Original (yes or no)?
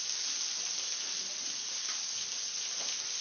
yes